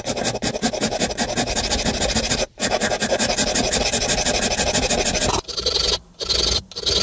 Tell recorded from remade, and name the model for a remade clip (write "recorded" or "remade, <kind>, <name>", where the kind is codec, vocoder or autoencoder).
recorded